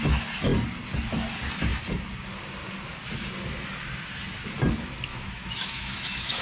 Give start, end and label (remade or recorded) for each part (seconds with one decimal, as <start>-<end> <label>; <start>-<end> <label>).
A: 0.0-5.1 recorded; 5.1-6.4 remade